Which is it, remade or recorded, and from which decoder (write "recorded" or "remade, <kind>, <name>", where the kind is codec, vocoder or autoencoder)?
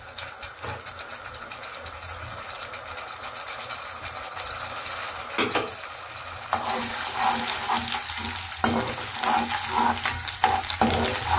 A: recorded